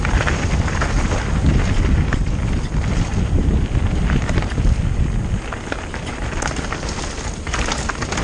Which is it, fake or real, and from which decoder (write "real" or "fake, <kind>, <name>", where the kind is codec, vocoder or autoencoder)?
real